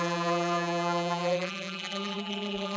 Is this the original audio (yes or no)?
no